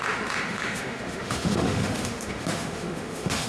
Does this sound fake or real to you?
fake